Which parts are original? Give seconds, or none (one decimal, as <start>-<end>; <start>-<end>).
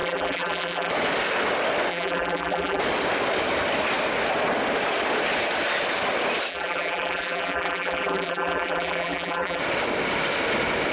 0.9-1.9; 2.8-6.5; 9.6-10.9